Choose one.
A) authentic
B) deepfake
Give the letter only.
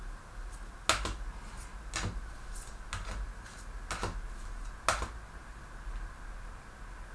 A